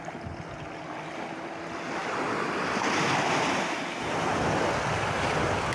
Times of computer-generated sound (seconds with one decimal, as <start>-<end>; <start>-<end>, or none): none